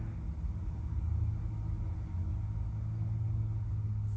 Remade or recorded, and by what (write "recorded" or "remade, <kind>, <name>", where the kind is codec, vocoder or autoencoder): recorded